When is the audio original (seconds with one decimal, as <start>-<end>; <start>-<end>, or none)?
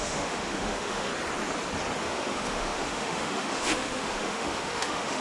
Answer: 1.1-2.0